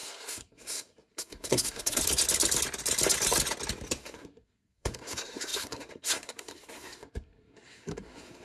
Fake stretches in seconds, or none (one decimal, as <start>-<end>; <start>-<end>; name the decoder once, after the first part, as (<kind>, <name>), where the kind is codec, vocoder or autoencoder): 0.0-2.0 (codec, SNAC); 4.0-8.4